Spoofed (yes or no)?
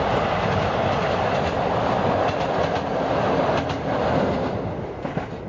no